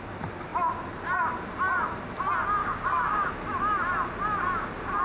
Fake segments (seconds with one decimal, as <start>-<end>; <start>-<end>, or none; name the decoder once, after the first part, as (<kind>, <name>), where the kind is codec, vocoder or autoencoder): 2.6-3.3 (codec, DAC)